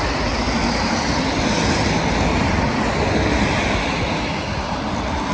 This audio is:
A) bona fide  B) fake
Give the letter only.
A